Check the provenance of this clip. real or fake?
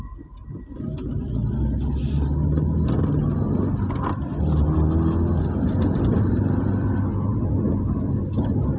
real